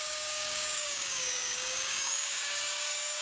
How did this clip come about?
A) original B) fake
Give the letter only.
B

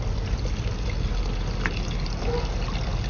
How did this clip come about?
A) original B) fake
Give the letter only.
A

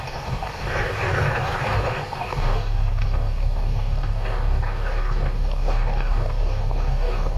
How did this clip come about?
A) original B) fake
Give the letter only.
B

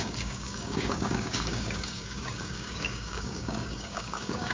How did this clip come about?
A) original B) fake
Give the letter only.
B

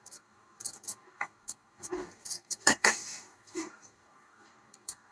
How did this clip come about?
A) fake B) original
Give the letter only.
A